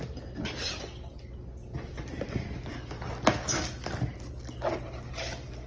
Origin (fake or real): real